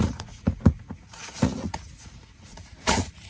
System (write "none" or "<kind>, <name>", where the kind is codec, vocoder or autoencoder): vocoder, Vocos